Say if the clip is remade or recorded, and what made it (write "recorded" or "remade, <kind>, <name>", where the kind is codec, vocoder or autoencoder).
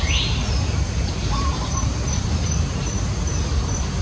remade, vocoder, BigVGAN v2